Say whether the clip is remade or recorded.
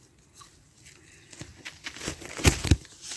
recorded